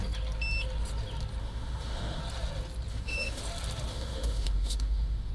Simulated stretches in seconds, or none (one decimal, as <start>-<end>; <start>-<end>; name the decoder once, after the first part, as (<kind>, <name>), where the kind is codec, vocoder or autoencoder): 1.4-2.2 (autoencoder, DAC-VAE); 2.9-3.4; 3.9-5.3